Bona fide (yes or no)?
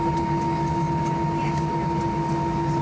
yes